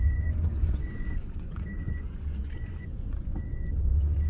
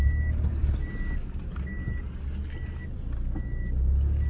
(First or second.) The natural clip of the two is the second